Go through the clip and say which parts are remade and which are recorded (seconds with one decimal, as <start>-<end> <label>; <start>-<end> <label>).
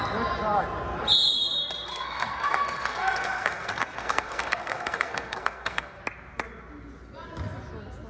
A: 0.0-1.9 recorded; 1.9-6.0 remade; 6.0-8.1 recorded